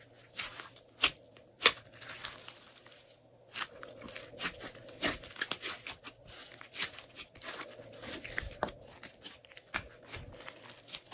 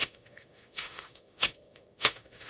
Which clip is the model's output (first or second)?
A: second